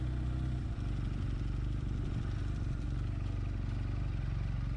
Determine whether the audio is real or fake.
real